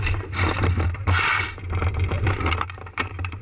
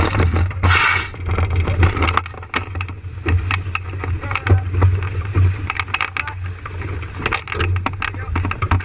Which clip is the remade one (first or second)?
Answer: first